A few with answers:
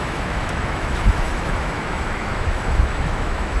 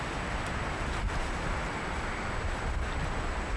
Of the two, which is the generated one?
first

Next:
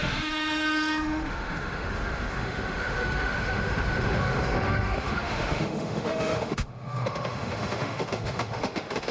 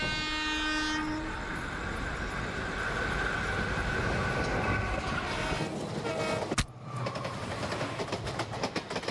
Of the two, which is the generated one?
first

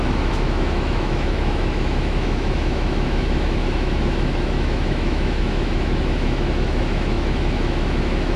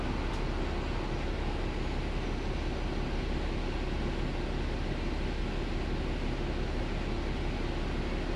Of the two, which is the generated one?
first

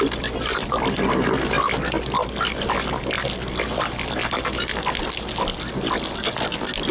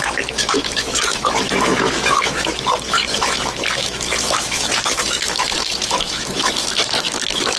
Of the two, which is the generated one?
second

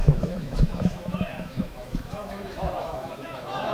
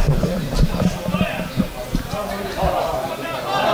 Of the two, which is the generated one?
first